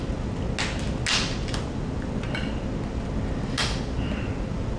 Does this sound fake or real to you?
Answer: real